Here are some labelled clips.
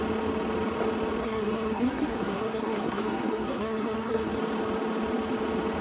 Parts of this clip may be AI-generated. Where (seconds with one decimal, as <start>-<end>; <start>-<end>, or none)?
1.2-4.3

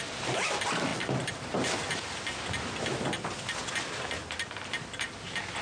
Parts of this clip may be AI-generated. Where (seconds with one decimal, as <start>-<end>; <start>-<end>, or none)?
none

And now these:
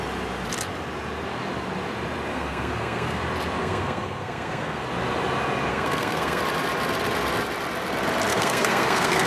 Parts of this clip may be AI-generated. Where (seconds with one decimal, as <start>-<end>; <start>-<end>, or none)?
2.3-3.2; 3.6-4.8; 5.7-6.4; 8.3-9.3

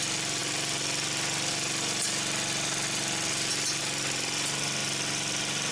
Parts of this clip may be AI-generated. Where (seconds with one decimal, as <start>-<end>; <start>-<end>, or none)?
none

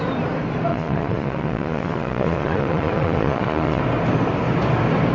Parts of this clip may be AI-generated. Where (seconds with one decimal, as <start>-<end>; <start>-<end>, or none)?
0.7-3.8

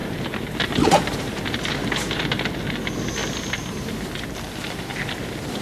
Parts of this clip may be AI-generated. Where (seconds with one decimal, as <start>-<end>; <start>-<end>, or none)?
0.0-1.4; 1.8-2.4